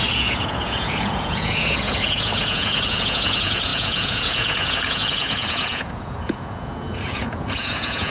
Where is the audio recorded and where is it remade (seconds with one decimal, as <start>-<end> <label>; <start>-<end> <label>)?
0.0-8.1 remade